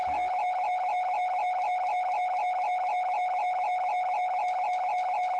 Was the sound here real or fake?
real